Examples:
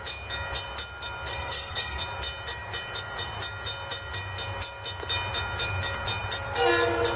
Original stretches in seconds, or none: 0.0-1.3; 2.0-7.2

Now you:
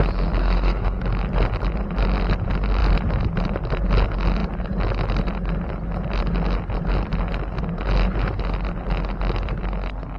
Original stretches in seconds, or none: 0.0-0.4; 1.0-10.2